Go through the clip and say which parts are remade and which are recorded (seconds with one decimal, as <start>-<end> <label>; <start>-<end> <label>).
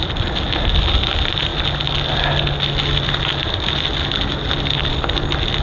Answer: 0.0-5.6 recorded